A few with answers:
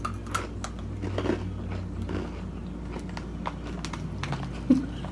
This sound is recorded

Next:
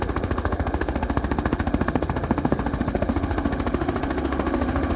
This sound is remade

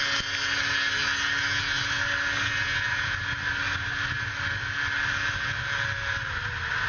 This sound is recorded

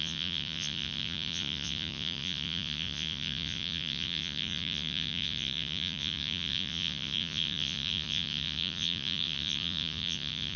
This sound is remade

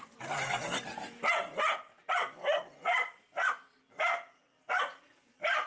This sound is recorded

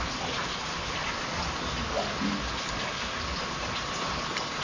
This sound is recorded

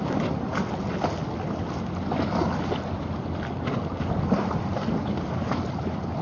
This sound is recorded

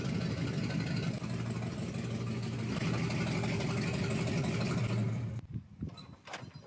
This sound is recorded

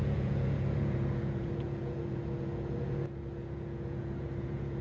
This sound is remade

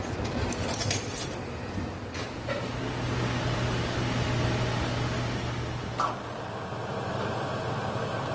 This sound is recorded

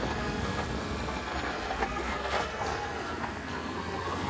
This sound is remade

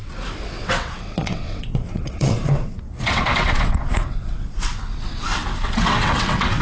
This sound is remade